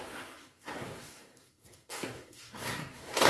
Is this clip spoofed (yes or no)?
yes